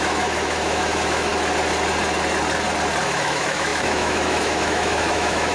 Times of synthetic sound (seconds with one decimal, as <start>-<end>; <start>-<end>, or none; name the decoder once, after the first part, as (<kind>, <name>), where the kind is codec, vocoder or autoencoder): 0.0-1.3 (autoencoder, DAC-VAE); 3.0-5.5